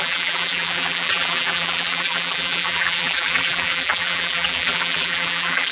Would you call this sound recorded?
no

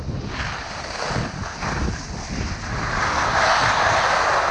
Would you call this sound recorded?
yes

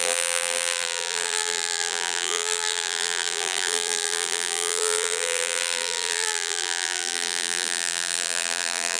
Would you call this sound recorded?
no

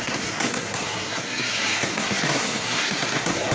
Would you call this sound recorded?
no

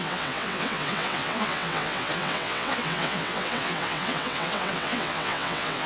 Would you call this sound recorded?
no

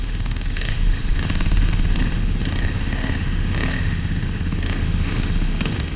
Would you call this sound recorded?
no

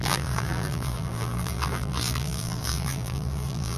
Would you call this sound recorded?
no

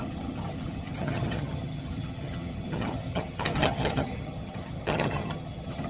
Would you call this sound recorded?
no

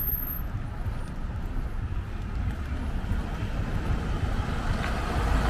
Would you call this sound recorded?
yes